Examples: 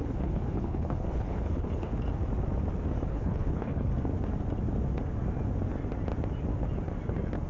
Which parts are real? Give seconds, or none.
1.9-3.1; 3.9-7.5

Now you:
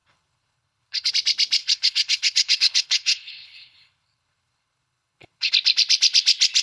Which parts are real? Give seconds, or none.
1.1-1.6; 5.5-6.6